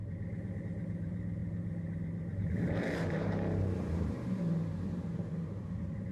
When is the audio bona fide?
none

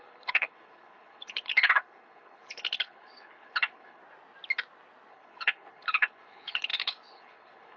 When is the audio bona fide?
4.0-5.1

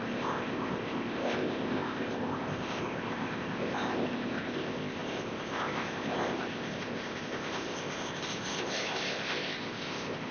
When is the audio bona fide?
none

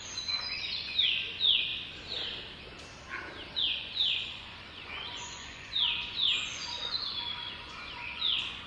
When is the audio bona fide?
1.7-3.6

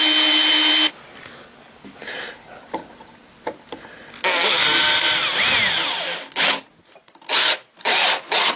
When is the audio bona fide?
0.0-8.6

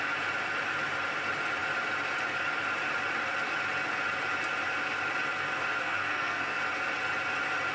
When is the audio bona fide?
0.0-5.8; 6.6-7.7

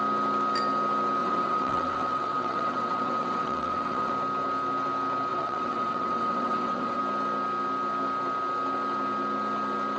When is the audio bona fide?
0.0-1.2; 4.1-5.3; 7.0-10.0

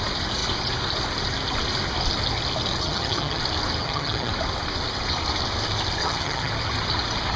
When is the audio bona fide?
0.0-2.8; 3.4-3.8; 4.3-6.0; 6.5-7.4